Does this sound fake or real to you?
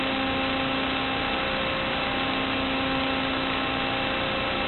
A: real